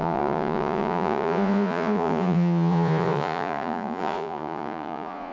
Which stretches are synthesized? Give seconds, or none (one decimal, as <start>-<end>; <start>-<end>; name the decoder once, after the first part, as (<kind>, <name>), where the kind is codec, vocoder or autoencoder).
0.0-5.3 (vocoder, Vocos)